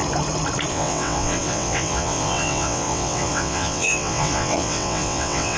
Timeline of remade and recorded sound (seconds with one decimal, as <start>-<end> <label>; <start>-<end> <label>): 0.0-0.7 recorded; 0.7-5.6 remade